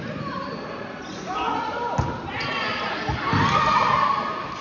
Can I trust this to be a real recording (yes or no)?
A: yes